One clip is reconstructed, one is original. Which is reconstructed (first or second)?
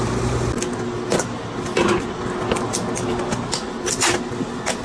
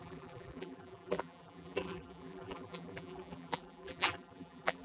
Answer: second